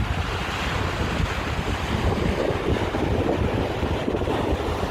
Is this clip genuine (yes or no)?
yes